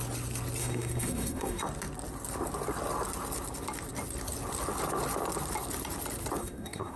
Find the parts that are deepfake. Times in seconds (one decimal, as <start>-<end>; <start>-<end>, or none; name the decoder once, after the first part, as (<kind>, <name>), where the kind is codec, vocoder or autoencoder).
0.6-1.6 (codec, SNAC); 6.4-7.0